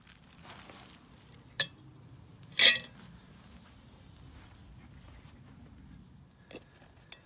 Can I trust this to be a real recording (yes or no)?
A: yes